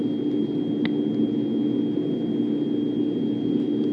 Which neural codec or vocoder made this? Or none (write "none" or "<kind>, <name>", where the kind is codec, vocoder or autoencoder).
none